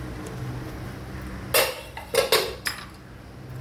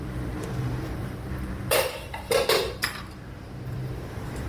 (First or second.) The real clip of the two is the first